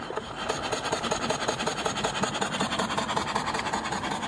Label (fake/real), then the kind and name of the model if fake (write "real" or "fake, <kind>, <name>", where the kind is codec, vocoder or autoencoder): real